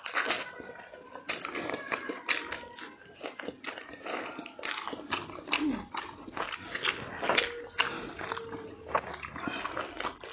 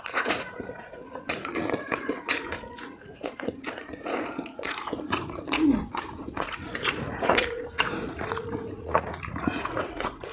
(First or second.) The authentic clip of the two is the first